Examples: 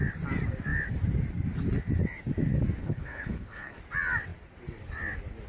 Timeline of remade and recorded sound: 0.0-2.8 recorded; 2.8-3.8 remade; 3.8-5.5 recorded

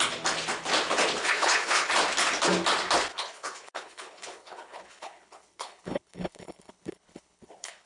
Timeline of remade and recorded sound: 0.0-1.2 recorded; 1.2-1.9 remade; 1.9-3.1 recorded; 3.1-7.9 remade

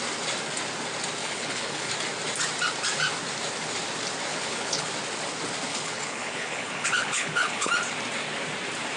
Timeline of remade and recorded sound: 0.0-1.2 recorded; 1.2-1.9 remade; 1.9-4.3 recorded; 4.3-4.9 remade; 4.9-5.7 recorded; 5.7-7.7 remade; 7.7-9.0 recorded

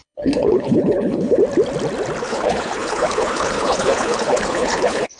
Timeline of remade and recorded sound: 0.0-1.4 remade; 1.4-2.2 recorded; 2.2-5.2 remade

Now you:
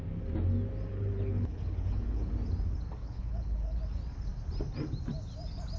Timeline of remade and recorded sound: 0.0-0.9 recorded; 0.9-2.3 remade; 2.3-3.0 recorded; 3.0-3.8 remade; 3.8-5.8 recorded

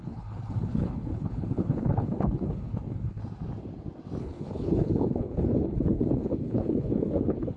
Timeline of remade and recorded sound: 0.0-3.2 remade; 3.2-4.2 recorded; 4.2-7.6 remade